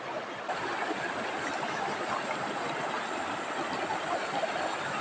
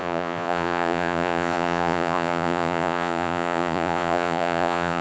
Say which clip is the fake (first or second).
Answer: second